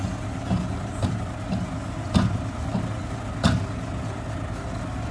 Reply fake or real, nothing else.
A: real